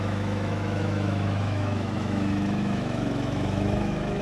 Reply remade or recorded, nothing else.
remade